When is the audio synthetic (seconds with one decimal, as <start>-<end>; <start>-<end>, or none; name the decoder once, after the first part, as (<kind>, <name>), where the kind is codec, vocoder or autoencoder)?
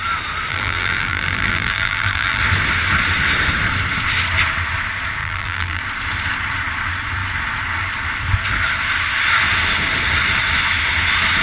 0.5-2.4 (vocoder, BigVGAN v2); 5.2-5.8